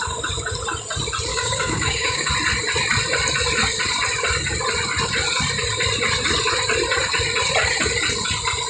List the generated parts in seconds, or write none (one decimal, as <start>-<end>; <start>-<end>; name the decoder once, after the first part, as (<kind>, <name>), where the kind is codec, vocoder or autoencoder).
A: 1.3-2.3 (codec, DAC)